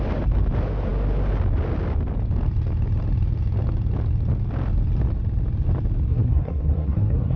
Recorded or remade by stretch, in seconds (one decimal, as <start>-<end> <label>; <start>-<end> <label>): 0.0-6.1 recorded; 6.1-7.4 remade